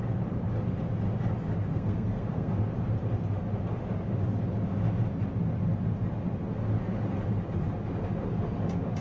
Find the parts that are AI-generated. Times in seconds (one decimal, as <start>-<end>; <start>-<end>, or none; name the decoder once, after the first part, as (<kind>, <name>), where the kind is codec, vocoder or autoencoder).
1.7-2.5 (codec, SNAC)